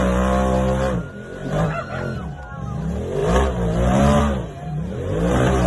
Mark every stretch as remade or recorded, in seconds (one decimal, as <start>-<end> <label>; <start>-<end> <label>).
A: 0.0-1.4 recorded; 1.4-1.9 remade; 1.9-3.2 recorded; 3.2-4.2 remade; 4.2-5.7 recorded